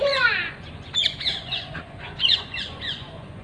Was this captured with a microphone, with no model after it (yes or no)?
no